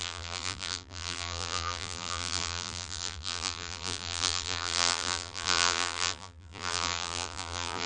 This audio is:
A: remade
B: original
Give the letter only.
A